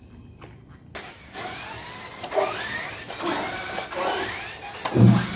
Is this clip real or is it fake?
real